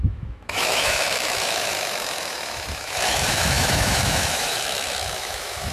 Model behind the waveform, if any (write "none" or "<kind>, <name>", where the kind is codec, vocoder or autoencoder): autoencoder, DAC-VAE